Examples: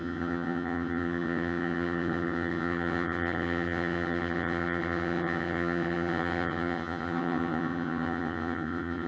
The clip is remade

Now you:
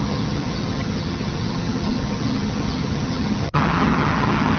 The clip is remade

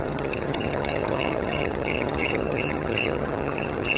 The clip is remade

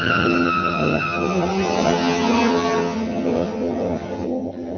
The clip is remade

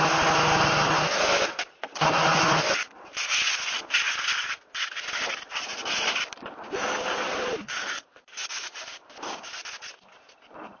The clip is recorded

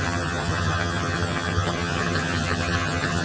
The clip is remade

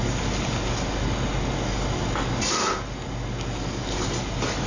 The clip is recorded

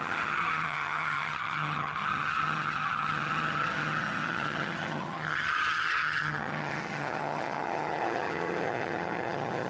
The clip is remade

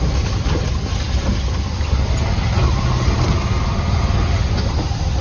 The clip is recorded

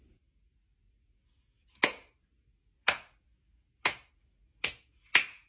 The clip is recorded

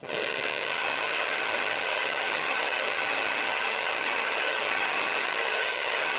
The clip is remade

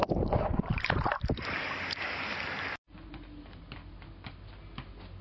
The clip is recorded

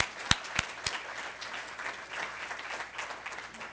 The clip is recorded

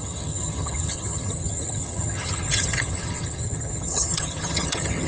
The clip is remade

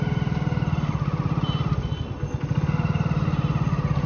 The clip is recorded